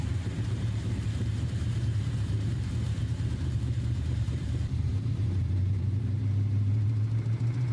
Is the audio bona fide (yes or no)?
no